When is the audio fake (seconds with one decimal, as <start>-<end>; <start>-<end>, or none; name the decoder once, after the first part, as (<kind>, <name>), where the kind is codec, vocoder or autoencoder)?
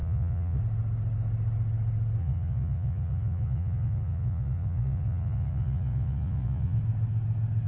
0.0-0.6 (vocoder, Vocos); 2.2-6.8